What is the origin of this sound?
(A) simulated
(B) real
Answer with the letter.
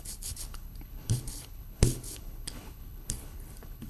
A